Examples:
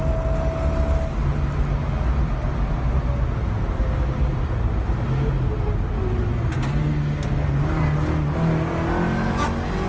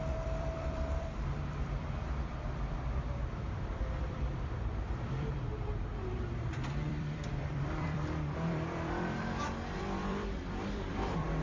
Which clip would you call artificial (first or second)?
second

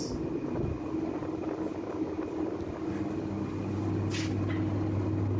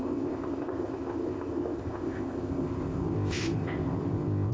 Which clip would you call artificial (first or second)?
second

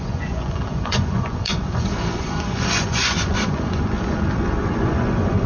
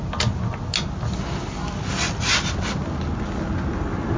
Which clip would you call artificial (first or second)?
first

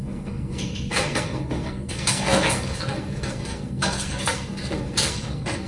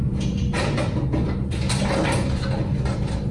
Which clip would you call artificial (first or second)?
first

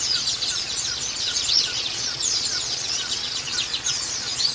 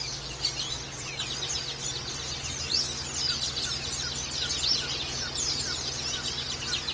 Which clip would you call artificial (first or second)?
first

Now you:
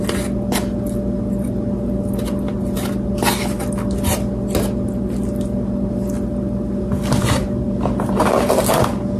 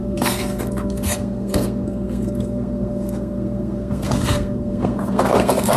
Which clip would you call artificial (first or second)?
second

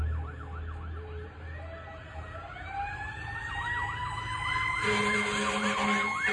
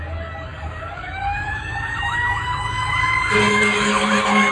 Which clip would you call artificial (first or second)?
second